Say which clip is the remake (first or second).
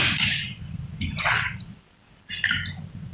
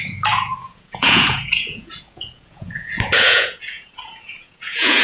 second